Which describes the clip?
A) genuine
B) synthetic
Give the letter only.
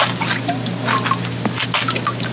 A